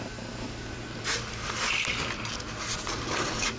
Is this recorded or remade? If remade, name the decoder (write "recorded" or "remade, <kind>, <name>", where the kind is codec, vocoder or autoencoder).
recorded